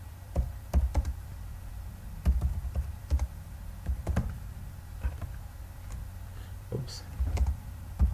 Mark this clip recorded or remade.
remade